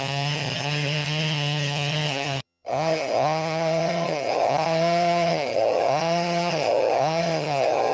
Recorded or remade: remade